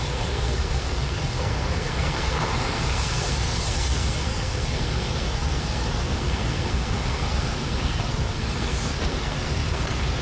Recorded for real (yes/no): no